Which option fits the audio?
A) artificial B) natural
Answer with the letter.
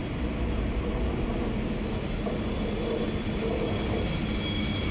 B